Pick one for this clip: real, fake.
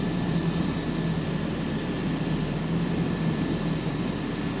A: real